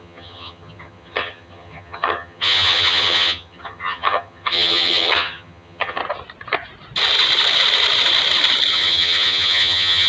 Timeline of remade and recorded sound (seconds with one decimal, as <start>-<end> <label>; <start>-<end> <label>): 0.0-6.0 remade; 6.0-8.7 recorded; 8.7-10.1 remade